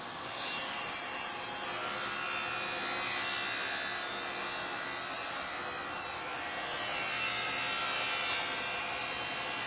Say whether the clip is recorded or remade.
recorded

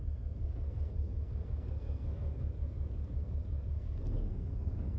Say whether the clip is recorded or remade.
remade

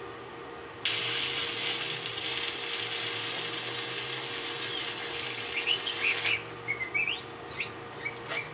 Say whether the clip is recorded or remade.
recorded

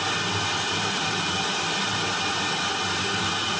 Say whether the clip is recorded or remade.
recorded